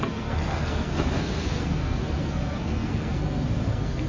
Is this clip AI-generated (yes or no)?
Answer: yes